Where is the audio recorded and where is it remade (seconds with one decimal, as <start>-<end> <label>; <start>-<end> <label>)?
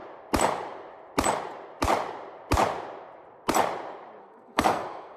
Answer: 0.0-4.2 recorded; 4.2-5.2 remade